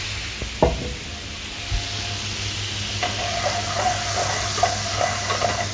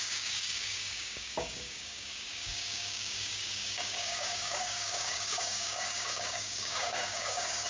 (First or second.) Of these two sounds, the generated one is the second